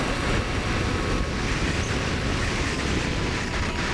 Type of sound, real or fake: real